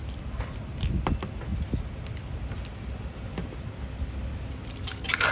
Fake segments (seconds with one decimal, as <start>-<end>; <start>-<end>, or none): none